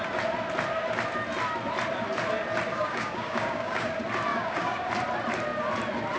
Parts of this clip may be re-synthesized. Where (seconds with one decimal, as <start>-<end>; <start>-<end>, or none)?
2.7-3.9; 4.3-4.9